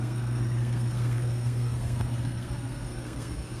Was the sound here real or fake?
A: fake